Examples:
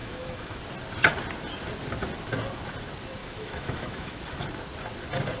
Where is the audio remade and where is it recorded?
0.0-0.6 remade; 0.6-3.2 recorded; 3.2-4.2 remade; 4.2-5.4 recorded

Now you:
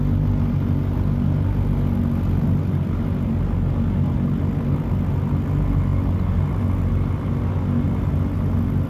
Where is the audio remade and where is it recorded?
0.0-8.9 recorded

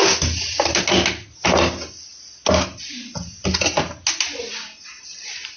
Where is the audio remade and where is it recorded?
0.0-5.6 recorded

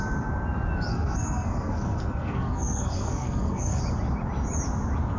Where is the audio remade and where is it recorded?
0.0-0.9 recorded; 0.9-3.8 remade; 3.8-5.2 recorded

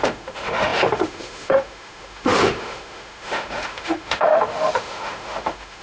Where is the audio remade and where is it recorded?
0.0-5.8 remade

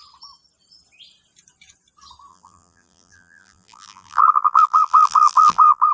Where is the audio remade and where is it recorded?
0.0-2.3 recorded; 2.3-5.9 remade